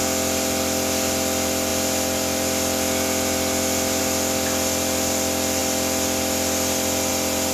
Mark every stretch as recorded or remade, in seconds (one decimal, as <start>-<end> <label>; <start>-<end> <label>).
0.0-7.5 recorded